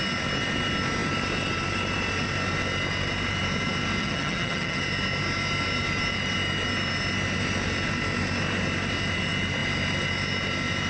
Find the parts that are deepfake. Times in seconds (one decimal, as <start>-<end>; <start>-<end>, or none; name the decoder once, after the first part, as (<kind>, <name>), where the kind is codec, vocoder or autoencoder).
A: 4.0-4.8 (vocoder, HiFi-GAN)